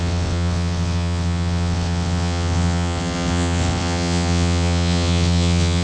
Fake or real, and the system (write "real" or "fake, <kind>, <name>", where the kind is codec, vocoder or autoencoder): fake, vocoder, WaveNeXt